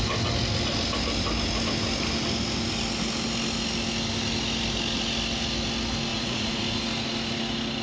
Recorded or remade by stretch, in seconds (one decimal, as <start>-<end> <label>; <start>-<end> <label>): 0.0-6.1 recorded; 6.1-6.8 remade; 6.8-7.8 recorded